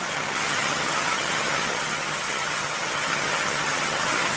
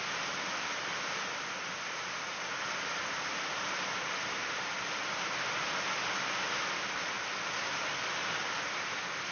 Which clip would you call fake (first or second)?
first